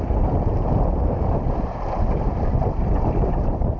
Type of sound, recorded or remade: recorded